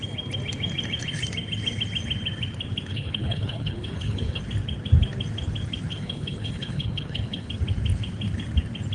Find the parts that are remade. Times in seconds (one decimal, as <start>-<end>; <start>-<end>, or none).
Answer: 2.9-4.4; 5.9-7.5